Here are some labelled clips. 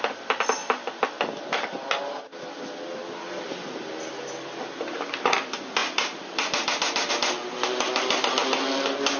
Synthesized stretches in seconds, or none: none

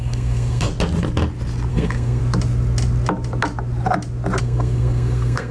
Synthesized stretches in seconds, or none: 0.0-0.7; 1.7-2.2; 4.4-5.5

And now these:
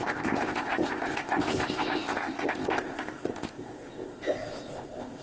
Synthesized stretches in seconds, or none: 0.0-5.2